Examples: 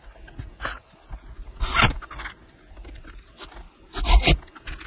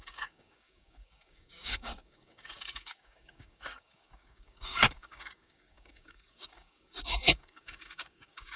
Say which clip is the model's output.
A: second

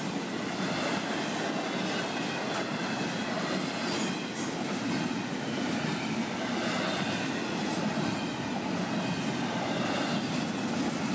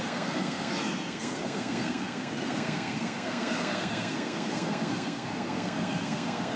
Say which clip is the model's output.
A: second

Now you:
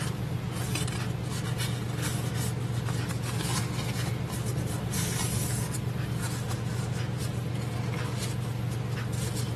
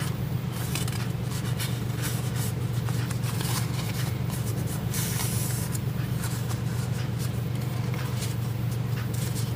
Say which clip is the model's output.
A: second